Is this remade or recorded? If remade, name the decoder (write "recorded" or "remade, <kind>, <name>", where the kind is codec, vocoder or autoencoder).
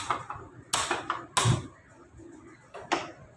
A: recorded